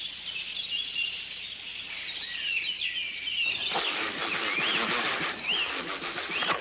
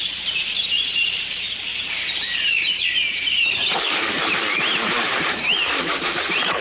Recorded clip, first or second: first